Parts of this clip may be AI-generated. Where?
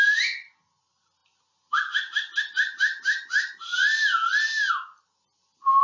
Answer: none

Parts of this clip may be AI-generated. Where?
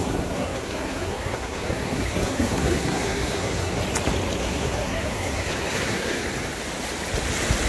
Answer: 0.0-3.8 (codec, SNAC); 4.4-6.2